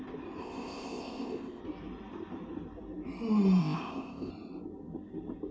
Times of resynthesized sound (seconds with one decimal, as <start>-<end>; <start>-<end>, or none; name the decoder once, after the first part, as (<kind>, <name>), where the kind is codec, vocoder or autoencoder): 0.4-1.6 (codec, ZipCodec); 3.6-4.3